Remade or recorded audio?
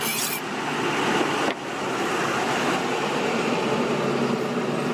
recorded